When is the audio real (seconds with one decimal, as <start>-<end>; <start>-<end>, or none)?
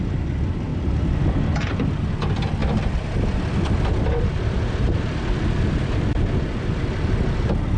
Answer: 0.0-2.6; 6.2-7.8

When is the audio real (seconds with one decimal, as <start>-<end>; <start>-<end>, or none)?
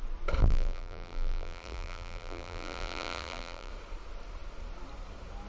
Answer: 0.0-0.4; 3.7-5.5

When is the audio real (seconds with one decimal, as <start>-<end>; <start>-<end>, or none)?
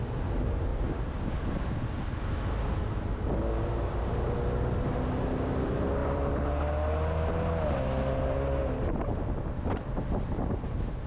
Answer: 0.0-0.7; 1.3-6.0; 6.6-11.1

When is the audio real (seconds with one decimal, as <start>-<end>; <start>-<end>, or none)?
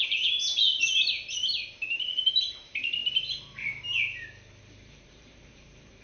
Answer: 0.5-1.9